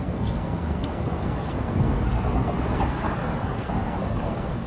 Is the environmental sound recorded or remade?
remade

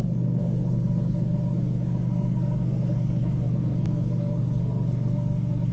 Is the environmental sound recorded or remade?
remade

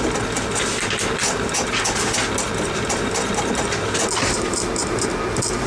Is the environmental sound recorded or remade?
recorded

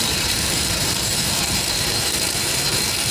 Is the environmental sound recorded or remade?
remade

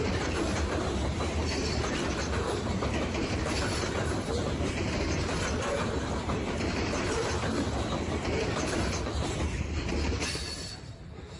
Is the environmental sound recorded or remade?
remade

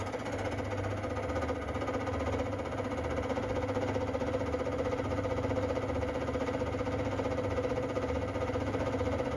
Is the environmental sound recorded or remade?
recorded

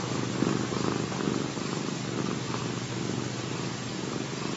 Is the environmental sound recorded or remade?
recorded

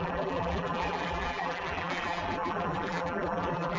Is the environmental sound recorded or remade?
remade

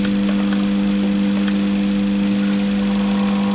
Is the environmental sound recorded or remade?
recorded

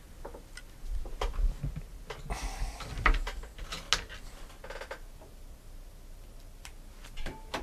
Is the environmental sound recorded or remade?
recorded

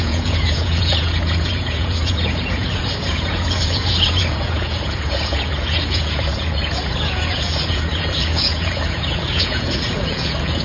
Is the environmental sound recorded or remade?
remade